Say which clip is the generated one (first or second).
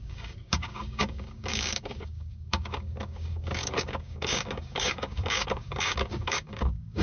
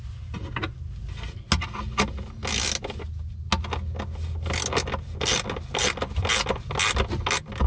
first